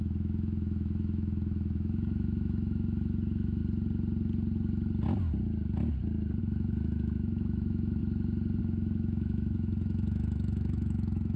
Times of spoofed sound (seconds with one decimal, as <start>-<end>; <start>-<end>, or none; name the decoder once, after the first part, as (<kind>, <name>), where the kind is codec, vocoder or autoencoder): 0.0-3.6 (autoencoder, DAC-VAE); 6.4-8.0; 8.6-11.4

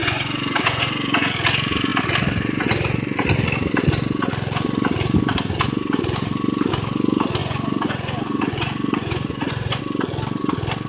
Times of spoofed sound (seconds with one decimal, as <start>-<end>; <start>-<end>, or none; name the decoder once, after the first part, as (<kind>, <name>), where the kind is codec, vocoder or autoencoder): 0.0-1.3 (vocoder, Vocos); 7.4-9.8

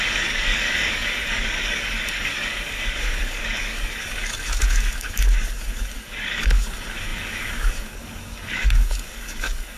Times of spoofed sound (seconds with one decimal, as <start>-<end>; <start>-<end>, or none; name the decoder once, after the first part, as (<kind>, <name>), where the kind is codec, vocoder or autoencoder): 0.0-9.8 (codec, DAC)

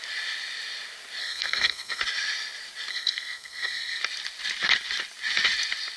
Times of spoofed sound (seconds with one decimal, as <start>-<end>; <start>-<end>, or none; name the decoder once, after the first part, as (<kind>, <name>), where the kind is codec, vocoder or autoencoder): 1.2-2.0 (codec, SNAC); 2.9-4.0

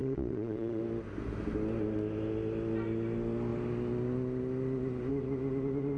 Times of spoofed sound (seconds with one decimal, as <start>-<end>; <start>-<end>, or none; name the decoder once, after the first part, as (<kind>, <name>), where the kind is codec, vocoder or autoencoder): 0.0-0.8 (vocoder, Vocos)

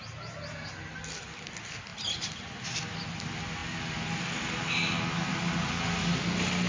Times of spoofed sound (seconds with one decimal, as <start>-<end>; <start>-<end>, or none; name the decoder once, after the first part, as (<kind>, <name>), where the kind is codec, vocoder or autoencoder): 1.9-2.5 (vocoder, BigVGAN v2)

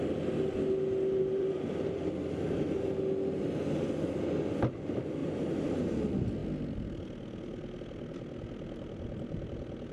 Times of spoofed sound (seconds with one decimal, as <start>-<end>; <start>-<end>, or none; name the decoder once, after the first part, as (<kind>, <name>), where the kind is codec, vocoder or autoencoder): 1.2-2.1 (vocoder, BigVGAN v2); 5.2-5.9

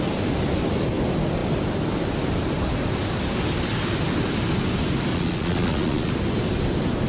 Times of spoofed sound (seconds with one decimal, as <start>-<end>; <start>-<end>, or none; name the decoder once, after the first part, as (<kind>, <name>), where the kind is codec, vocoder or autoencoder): 5.1-6.1 (vocoder, Vocos)